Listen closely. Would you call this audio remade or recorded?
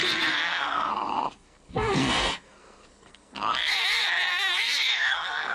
remade